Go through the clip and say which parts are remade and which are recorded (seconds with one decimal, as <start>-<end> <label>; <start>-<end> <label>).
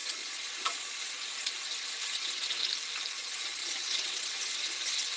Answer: 0.0-2.6 remade; 2.6-3.1 recorded; 3.1-5.2 remade